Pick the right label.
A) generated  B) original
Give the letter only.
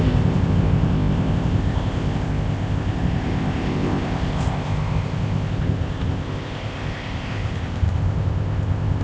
A